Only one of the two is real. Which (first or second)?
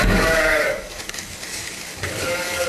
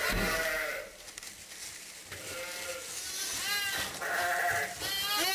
second